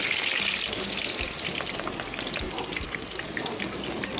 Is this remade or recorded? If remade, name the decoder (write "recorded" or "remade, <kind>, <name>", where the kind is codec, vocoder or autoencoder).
recorded